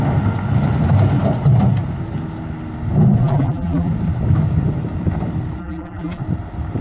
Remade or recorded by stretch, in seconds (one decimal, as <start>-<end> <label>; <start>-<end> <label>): 0.0-3.2 recorded; 3.2-3.9 remade; 3.9-5.6 recorded; 5.6-6.2 remade; 6.2-6.8 recorded